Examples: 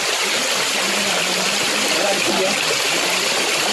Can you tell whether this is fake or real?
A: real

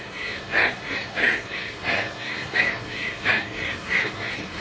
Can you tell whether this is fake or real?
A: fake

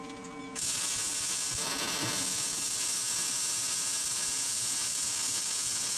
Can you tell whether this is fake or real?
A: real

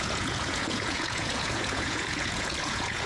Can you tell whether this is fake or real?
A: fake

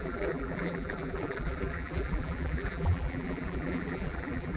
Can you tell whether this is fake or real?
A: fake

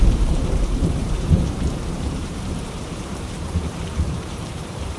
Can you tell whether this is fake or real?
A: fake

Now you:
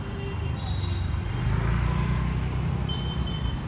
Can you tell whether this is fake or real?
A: real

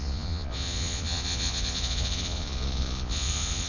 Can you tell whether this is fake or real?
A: fake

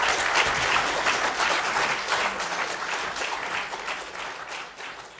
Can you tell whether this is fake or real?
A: real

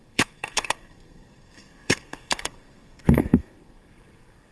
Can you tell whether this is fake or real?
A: fake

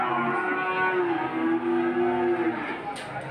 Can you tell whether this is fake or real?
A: real